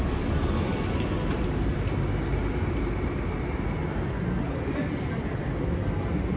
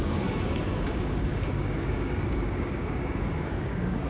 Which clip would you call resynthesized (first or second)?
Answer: second